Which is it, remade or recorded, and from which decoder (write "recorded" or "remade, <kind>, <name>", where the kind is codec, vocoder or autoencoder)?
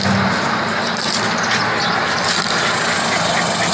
recorded